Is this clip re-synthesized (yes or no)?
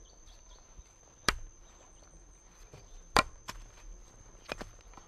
no